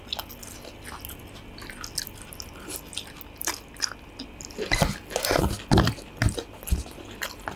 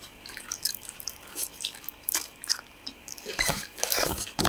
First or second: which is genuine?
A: first